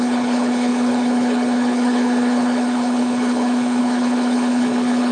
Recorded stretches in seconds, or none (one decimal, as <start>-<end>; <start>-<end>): none